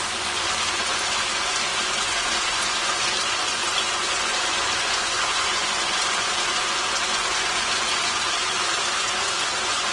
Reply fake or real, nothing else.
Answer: fake